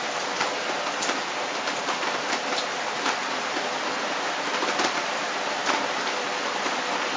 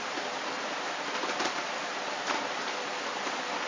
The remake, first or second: second